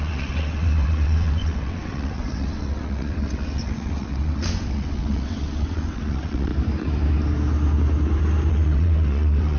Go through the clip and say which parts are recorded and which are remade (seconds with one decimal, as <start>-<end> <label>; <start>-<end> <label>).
0.0-6.5 remade; 6.5-8.5 recorded; 8.5-9.6 remade